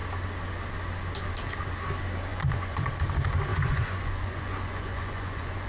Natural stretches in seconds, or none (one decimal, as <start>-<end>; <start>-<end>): 0.0-2.3; 2.9-3.5